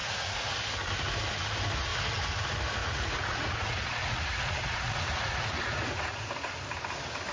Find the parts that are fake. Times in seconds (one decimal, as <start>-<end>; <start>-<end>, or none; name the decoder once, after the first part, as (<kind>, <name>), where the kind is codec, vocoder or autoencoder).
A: 0.0-0.6 (vocoder, Vocos); 2.8-6.5